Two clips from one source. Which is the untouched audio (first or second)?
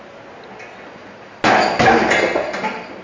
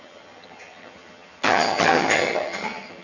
first